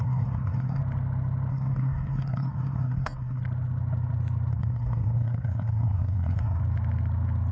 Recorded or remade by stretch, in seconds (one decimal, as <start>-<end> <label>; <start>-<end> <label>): 0.0-0.8 remade; 0.8-1.5 recorded; 1.5-3.4 remade; 3.4-4.5 recorded; 4.5-6.6 remade; 6.6-7.5 recorded